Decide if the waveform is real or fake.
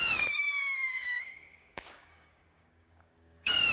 fake